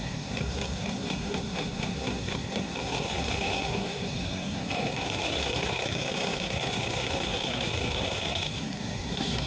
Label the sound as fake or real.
fake